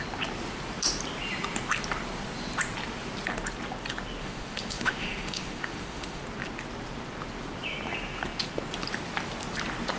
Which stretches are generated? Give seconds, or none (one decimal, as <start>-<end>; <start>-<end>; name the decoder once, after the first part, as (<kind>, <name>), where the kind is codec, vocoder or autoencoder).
4.2-6.2 (autoencoder, DAC-VAE)